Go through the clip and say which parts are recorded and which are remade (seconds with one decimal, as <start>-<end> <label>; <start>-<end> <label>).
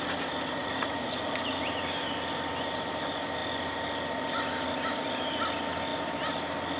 0.0-0.6 recorded; 0.6-1.6 remade; 1.6-6.8 recorded